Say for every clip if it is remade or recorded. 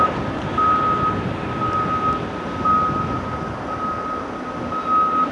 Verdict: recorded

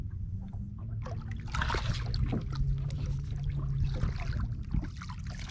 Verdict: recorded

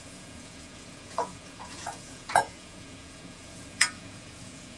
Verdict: remade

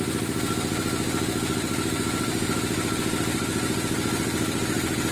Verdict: remade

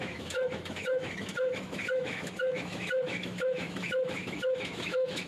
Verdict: remade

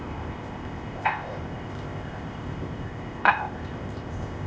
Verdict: remade